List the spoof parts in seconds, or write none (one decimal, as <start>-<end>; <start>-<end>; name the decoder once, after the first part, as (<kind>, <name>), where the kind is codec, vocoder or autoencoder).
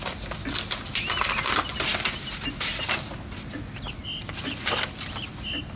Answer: none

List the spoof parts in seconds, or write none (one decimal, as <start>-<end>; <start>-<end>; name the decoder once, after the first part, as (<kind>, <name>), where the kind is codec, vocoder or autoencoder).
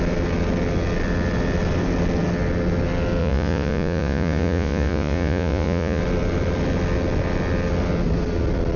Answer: 3.2-6.0 (vocoder, Vocos)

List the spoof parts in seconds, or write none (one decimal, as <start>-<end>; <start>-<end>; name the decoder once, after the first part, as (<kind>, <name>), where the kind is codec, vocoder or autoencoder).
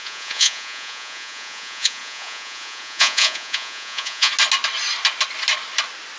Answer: 0.0-4.3 (vocoder, Vocos)